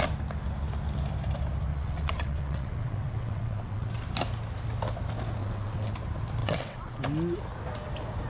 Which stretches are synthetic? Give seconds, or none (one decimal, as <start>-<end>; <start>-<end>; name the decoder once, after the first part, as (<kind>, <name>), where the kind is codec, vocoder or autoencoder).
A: 1.7-3.9 (vocoder, WaveNeXt); 5.4-5.9; 6.4-7.0